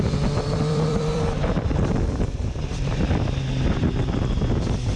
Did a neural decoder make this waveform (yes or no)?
yes